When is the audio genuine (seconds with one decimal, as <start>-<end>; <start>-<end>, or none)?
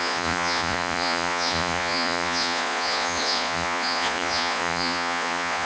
none